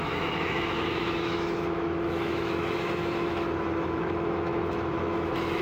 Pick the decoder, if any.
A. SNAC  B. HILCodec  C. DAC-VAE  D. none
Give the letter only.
C